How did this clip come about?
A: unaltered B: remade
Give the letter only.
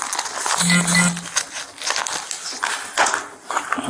A